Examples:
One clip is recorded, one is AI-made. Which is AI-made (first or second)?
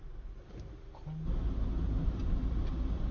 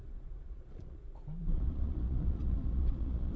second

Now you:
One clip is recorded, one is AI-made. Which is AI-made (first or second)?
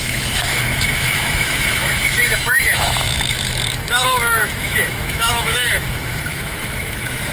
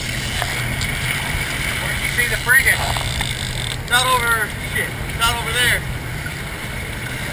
first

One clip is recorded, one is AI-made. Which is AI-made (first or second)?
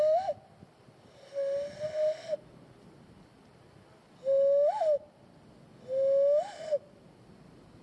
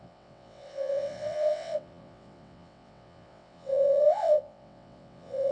second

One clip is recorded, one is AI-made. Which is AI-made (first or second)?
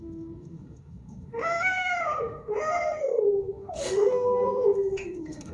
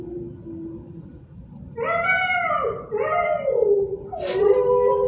first